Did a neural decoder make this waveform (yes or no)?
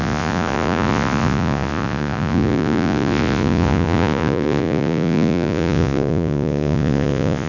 yes